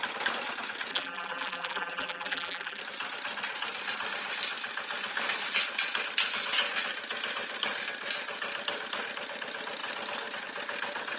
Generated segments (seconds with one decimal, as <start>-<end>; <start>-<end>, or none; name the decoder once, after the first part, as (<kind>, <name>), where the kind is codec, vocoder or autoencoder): 0.9-2.8 (vocoder, BigVGAN v2)